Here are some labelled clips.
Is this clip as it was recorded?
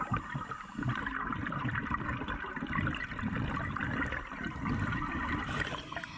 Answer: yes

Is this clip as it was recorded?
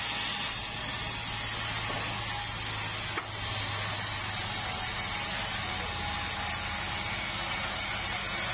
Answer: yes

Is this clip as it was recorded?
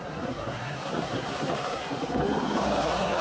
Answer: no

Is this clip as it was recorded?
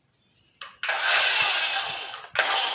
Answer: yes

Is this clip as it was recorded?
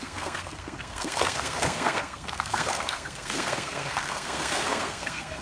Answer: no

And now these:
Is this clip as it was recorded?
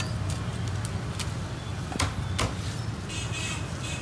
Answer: yes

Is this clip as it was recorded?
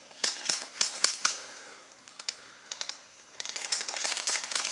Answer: no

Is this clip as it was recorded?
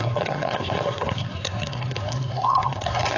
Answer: no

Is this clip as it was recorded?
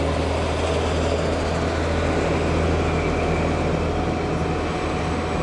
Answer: yes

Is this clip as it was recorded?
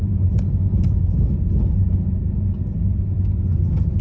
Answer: yes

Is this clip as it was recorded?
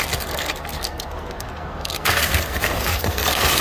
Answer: no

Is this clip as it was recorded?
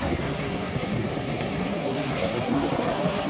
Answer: no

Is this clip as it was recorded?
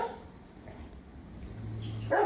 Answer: yes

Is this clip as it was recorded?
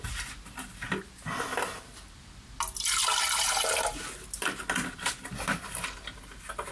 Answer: yes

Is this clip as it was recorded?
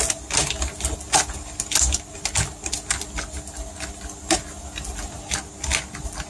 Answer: yes